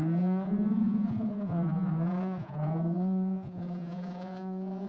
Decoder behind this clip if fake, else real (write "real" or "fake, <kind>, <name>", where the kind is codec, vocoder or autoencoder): fake, vocoder, Vocos